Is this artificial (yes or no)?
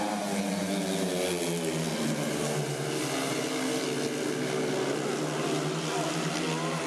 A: no